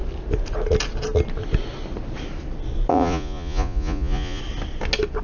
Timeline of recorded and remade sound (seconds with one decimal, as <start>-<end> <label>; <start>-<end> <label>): 0.0-2.9 recorded; 2.9-4.4 remade; 4.4-5.2 recorded